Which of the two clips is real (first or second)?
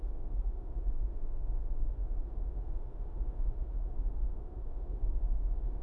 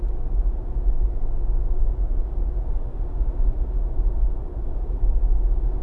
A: second